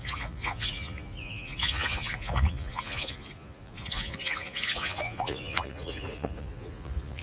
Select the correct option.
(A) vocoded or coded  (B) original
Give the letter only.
A